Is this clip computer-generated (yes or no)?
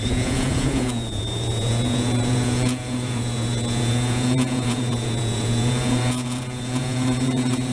yes